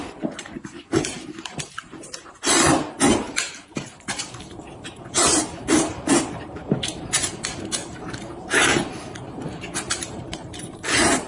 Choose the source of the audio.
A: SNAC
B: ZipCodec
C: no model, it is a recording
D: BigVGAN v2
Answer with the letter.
D